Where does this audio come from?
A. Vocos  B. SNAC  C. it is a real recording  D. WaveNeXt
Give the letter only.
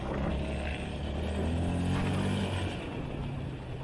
C